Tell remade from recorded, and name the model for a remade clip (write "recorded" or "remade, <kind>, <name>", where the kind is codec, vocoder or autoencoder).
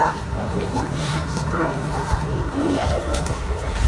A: remade, codec, SNAC